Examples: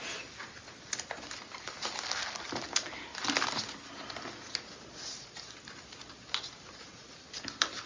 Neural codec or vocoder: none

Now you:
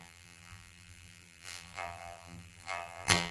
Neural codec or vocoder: vocoder, BigVGAN v2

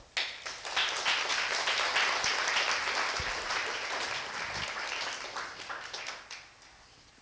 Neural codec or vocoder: none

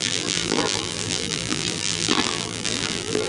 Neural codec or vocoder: vocoder, BigVGAN v2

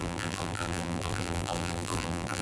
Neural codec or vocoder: vocoder, BigVGAN v2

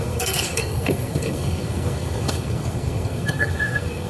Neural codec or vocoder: codec, SNAC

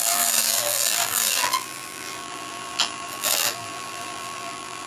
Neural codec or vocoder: vocoder, BigVGAN v2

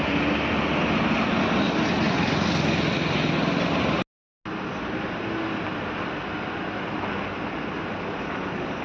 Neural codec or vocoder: none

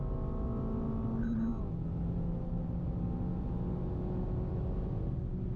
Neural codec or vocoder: none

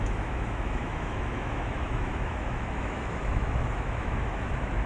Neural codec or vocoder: autoencoder, DAC-VAE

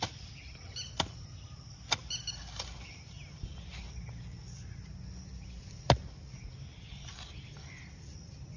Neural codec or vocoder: none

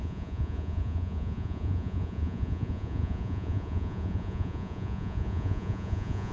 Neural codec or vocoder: vocoder, Vocos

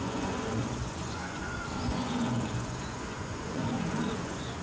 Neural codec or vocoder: vocoder, Vocos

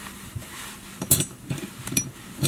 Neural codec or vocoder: vocoder, BigVGAN v2